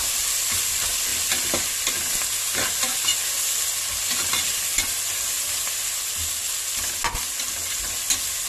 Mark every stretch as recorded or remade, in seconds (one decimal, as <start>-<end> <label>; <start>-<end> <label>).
0.0-1.1 recorded; 1.1-1.9 remade; 1.9-8.5 recorded